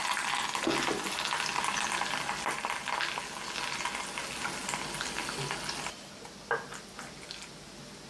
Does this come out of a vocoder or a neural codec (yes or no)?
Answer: no